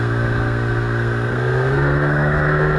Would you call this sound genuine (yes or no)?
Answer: no